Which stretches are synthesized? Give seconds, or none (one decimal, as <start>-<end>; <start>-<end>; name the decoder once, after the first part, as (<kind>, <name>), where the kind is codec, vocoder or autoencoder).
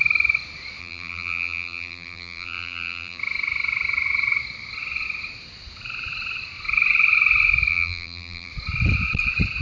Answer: 0.8-3.2 (vocoder, BigVGAN v2); 7.7-8.5